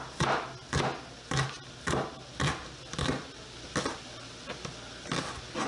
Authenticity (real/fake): real